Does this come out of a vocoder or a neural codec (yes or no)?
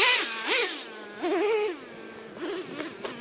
no